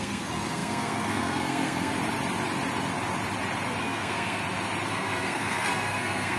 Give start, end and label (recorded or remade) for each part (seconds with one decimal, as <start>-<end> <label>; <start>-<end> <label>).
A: 0.0-1.9 remade; 1.9-3.8 recorded; 3.8-4.4 remade; 4.4-4.9 recorded; 4.9-6.4 remade